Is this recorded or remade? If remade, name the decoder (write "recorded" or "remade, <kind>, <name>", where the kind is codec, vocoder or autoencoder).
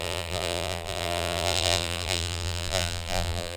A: remade, vocoder, BigVGAN v2